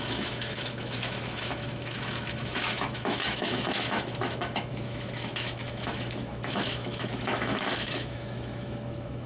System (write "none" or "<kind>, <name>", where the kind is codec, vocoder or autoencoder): autoencoder, DAC-VAE